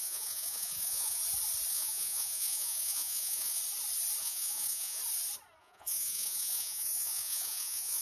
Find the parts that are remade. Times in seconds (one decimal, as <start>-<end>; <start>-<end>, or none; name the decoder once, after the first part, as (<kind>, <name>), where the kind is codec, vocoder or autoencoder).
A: 0.0-1.2 (vocoder, Vocos); 1.7-3.6; 4.2-5.0; 5.6-8.0